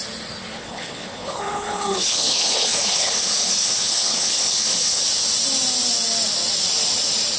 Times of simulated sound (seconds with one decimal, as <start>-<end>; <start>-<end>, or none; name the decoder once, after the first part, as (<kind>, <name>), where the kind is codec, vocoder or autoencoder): 0.6-5.0 (codec, HILCodec)